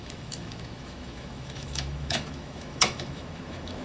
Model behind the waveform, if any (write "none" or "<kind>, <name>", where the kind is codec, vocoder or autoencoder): autoencoder, DAC-VAE